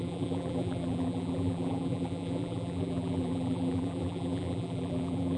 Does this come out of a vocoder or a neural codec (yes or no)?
yes